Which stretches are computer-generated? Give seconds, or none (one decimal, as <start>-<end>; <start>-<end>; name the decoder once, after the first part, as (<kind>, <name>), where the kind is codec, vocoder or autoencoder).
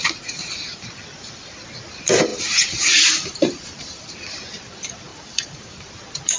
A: 2.3-4.1 (vocoder, BigVGAN v2); 5.1-5.9